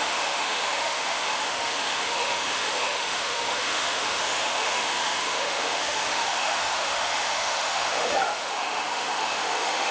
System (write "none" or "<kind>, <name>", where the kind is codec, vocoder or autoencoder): autoencoder, DAC-VAE